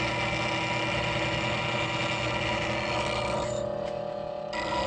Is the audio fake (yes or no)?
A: no